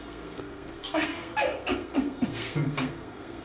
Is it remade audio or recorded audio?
remade